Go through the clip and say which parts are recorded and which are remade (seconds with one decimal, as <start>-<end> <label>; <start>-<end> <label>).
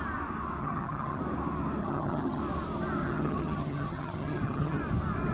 0.0-0.6 recorded; 0.6-1.2 remade; 1.2-1.8 recorded; 1.8-2.4 remade; 2.4-3.0 recorded; 3.0-4.8 remade; 4.8-5.3 recorded